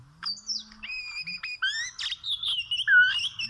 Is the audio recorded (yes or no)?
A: yes